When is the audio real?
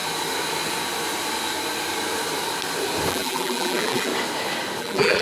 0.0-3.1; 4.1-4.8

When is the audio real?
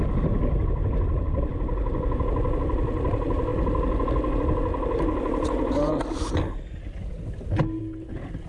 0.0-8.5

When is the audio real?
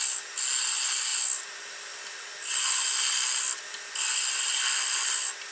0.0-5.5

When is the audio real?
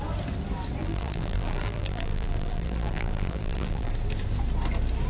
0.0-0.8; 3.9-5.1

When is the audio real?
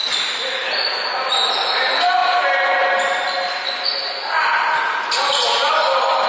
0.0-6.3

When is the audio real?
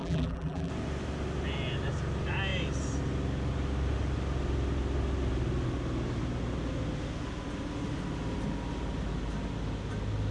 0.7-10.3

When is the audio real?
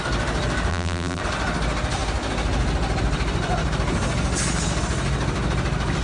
0.0-0.7; 1.2-6.0